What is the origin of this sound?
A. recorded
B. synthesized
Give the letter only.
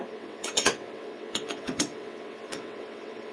B